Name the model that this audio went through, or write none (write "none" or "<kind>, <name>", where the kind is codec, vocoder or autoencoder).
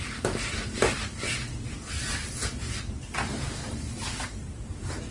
none